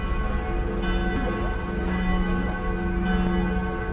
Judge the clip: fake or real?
real